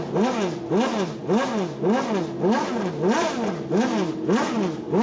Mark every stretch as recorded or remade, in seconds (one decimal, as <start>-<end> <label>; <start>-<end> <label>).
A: 0.0-5.0 recorded